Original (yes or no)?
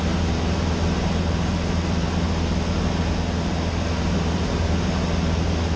yes